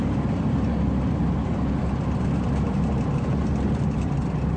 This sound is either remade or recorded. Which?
recorded